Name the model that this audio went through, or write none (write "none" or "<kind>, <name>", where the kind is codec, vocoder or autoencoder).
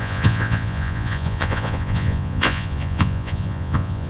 vocoder, Vocos